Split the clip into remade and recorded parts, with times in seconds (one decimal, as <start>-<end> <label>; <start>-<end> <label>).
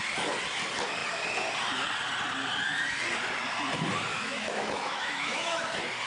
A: 0.0-4.1 recorded; 4.1-5.6 remade; 5.6-6.1 recorded